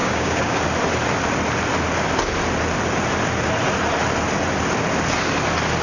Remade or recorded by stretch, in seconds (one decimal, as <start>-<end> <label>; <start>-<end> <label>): 0.0-0.6 remade; 0.6-5.8 recorded